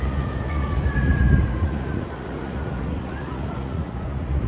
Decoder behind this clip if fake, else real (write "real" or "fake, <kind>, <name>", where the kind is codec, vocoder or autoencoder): fake, vocoder, Vocos